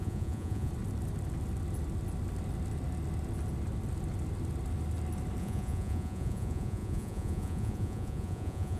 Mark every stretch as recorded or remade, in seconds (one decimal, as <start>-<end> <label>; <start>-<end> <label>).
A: 0.0-0.7 remade; 0.7-5.4 recorded; 5.4-8.8 remade